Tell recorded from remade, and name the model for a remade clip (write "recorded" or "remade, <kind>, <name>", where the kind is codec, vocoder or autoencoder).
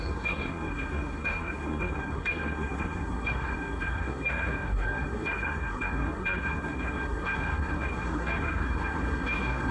remade, codec, SNAC